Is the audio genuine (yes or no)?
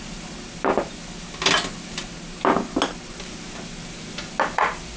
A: yes